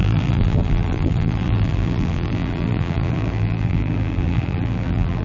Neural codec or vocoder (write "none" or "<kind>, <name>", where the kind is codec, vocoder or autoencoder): vocoder, BigVGAN v2